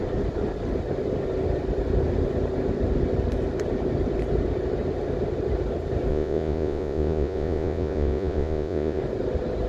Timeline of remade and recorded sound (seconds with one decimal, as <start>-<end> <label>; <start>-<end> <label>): 0.0-6.1 recorded; 6.1-9.0 remade; 9.0-9.7 recorded